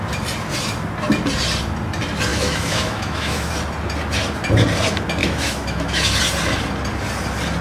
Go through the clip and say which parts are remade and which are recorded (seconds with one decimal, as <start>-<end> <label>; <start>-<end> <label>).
0.0-2.3 recorded; 2.3-3.5 remade; 3.5-5.2 recorded; 5.2-6.2 remade; 6.2-7.6 recorded